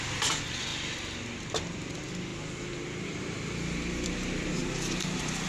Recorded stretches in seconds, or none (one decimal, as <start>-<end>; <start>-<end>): 0.7-1.5; 2.3-3.0